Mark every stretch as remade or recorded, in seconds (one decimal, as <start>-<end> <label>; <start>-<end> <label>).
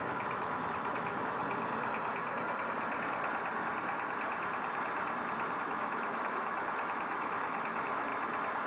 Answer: 0.0-1.4 remade; 1.4-5.6 recorded; 5.6-8.1 remade; 8.1-8.7 recorded